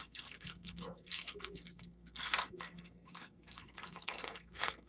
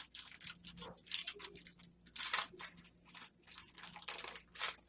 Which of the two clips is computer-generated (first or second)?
first